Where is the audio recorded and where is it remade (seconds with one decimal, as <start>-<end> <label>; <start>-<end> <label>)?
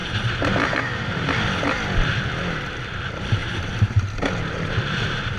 0.0-1.3 remade; 1.3-3.4 recorded; 3.4-5.4 remade